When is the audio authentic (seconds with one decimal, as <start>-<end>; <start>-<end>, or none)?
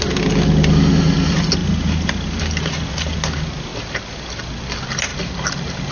0.0-1.6; 2.4-5.1